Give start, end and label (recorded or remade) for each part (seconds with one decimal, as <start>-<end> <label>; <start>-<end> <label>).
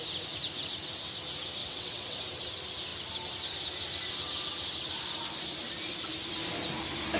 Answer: 0.0-1.6 recorded; 1.6-2.2 remade; 2.2-7.2 recorded